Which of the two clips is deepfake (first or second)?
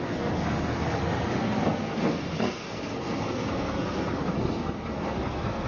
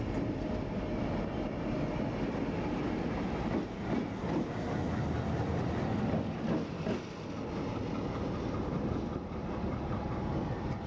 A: first